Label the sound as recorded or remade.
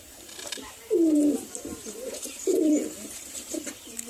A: remade